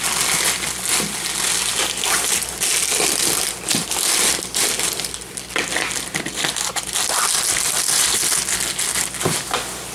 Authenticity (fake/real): real